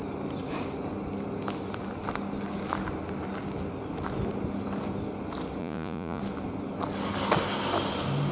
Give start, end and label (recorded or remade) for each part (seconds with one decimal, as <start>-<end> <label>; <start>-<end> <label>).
0.0-5.6 recorded; 5.6-6.2 remade; 6.2-8.3 recorded